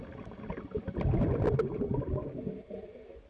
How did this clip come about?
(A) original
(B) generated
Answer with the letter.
A